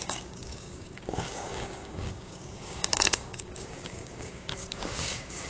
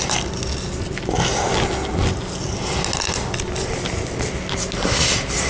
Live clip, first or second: second